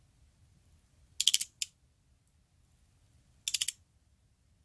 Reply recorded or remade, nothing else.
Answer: recorded